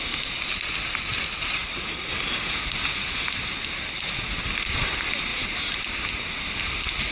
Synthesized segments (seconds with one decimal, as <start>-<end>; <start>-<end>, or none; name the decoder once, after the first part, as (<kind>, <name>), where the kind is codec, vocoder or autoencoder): none